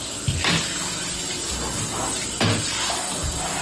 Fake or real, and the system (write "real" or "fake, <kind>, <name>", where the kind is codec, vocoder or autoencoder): real